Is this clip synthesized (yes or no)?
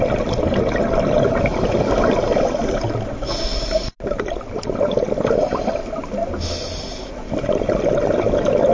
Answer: no